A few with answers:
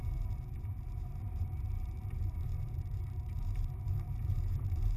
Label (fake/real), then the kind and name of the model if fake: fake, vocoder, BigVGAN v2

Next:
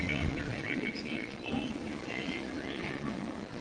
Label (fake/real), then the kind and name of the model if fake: fake, vocoder, Vocos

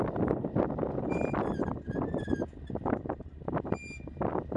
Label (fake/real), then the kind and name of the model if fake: real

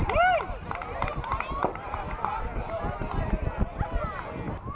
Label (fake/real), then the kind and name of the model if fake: real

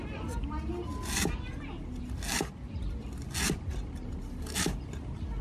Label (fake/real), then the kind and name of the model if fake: real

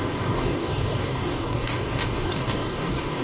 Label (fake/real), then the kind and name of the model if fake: fake, codec, DAC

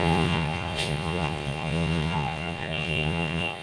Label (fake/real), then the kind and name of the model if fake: fake, vocoder, Vocos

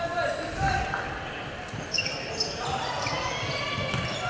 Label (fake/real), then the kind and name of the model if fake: real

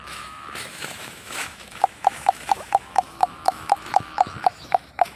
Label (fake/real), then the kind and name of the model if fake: fake, autoencoder, DAC-VAE